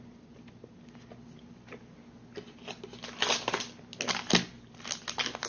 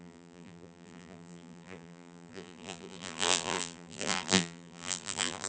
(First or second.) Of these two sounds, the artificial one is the second